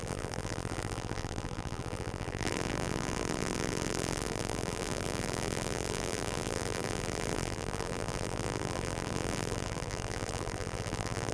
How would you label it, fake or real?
fake